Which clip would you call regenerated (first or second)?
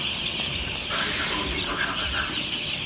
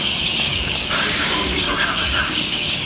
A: second